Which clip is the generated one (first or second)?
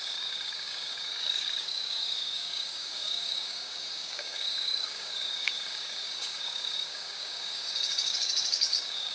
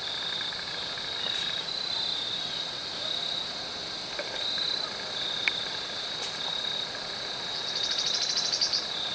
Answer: first